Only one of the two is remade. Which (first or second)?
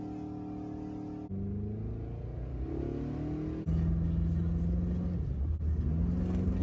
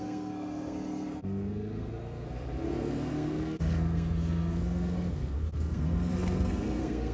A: second